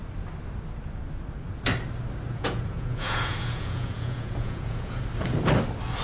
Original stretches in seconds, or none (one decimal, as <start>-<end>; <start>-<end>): 0.0-2.3; 5.0-6.0